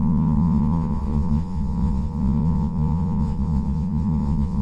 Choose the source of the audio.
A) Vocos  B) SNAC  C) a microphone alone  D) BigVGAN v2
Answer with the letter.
A